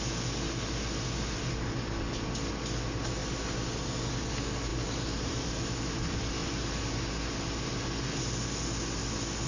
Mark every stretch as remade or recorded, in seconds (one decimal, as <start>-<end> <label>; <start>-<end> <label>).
0.0-4.7 recorded; 4.7-5.6 remade; 5.6-6.4 recorded; 6.4-6.9 remade; 6.9-9.5 recorded